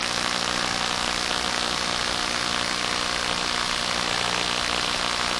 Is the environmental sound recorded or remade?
recorded